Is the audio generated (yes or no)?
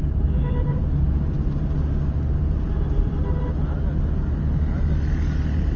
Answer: no